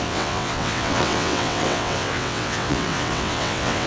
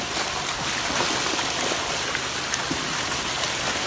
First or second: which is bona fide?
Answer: second